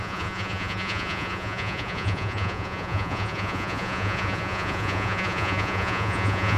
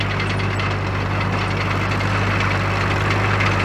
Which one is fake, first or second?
first